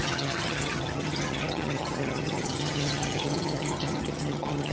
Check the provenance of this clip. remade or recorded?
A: remade